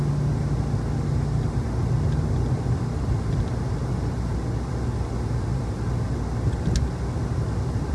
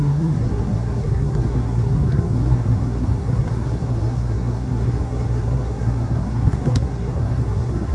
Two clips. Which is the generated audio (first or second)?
second